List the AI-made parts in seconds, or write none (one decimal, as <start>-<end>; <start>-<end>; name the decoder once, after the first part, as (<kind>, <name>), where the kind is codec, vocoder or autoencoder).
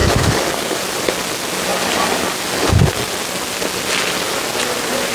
0.0-0.8 (codec, DAC)